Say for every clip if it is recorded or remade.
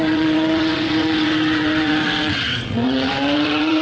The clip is remade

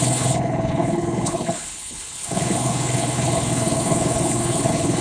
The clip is remade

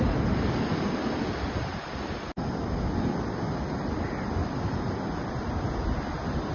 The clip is recorded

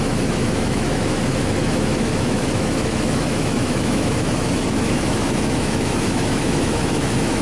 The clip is remade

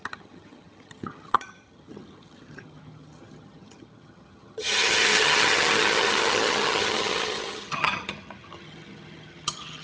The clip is remade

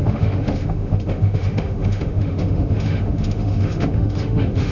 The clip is remade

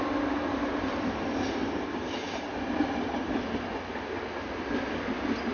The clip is recorded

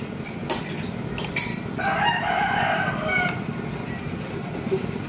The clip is recorded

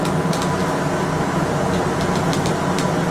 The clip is recorded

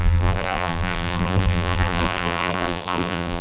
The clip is remade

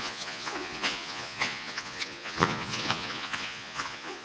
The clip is remade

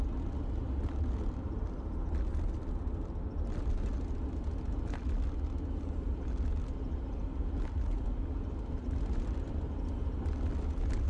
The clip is recorded